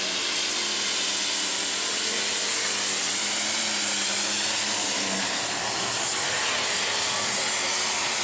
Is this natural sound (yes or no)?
yes